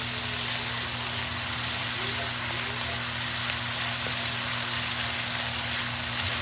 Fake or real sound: real